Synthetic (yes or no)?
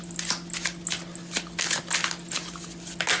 no